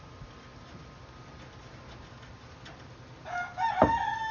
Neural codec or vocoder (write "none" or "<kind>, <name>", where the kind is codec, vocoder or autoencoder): none